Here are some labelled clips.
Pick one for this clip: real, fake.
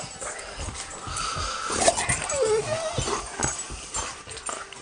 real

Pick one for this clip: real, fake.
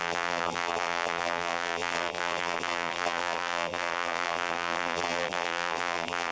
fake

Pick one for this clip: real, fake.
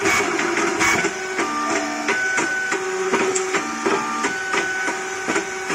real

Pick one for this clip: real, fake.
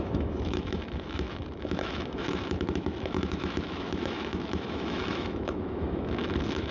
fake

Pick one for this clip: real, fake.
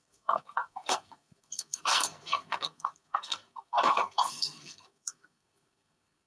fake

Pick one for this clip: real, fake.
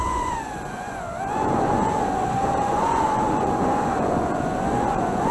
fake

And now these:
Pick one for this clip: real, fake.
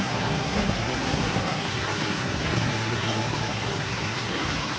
fake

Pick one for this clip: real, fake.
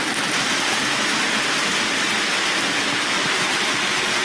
real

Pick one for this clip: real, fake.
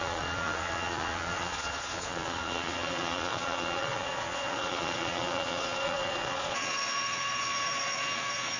fake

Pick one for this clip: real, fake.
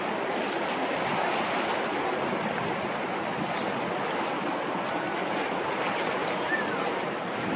real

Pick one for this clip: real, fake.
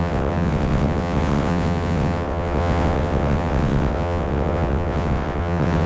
fake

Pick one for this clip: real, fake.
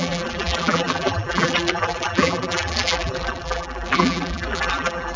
fake